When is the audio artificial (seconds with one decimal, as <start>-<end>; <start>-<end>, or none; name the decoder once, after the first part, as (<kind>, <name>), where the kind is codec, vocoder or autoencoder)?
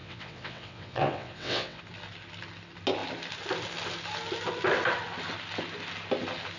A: 0.0-1.8 (vocoder, WaveNeXt)